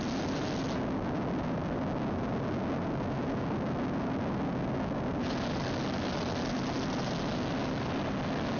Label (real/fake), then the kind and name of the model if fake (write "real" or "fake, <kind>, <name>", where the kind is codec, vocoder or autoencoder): real